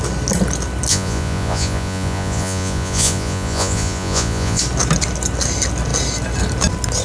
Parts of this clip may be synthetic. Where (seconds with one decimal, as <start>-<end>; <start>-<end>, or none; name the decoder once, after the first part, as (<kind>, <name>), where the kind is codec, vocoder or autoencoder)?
0.9-4.6 (vocoder, Vocos)